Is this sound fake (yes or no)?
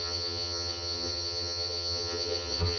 yes